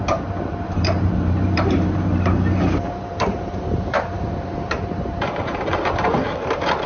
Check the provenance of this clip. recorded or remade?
remade